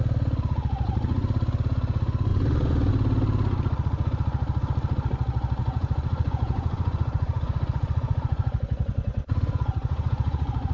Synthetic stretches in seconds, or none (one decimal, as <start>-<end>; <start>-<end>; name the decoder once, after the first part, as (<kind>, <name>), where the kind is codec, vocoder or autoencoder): 2.3-2.9 (vocoder, Vocos); 5.6-10.7